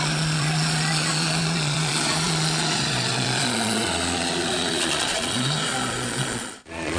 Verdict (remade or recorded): remade